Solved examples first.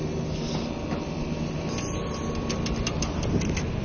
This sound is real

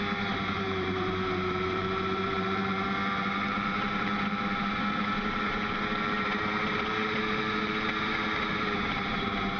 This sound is fake